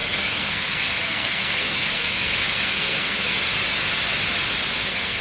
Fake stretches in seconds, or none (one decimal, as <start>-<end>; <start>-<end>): 0.0-3.5; 4.8-5.2